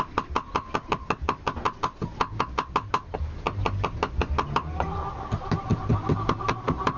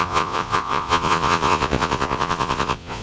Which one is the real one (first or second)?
first